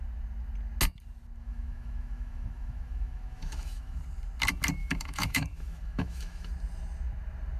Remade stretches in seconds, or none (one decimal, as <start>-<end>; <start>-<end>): 1.4-4.0; 4.8-6.5